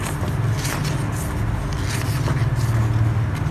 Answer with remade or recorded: recorded